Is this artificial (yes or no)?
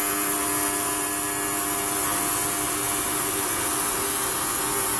no